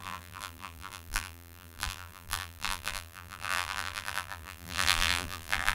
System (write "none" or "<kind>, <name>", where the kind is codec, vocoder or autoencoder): vocoder, BigVGAN v2